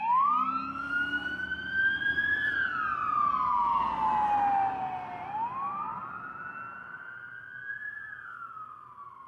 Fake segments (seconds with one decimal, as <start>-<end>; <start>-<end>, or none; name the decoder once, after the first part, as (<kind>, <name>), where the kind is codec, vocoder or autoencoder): none